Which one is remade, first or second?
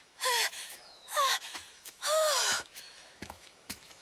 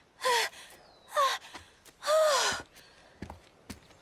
first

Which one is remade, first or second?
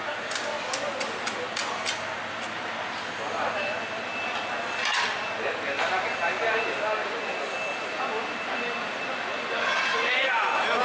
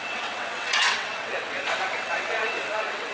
second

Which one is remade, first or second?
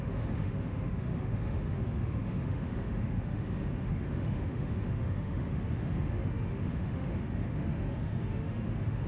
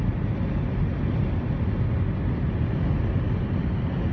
first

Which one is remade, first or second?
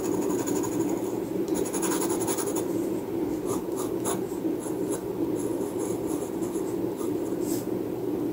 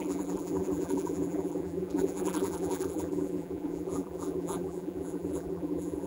second